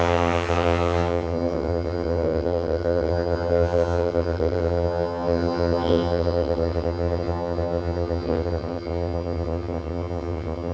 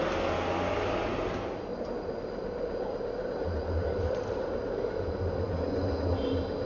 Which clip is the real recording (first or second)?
second